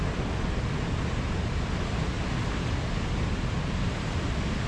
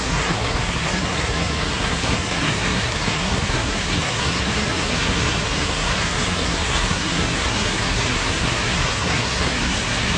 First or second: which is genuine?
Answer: first